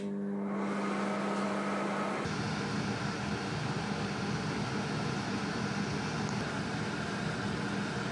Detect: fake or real real